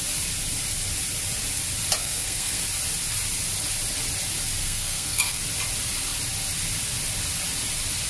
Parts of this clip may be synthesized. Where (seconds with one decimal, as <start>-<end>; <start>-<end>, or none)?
2.0-2.6; 4.6-5.4